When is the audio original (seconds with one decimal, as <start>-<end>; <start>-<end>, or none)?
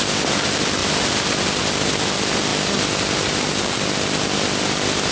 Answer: 0.0-5.1